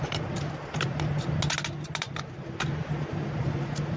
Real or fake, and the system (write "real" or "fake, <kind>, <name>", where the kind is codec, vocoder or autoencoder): real